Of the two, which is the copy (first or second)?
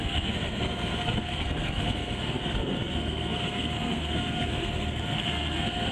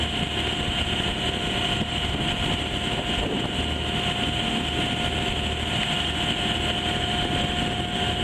first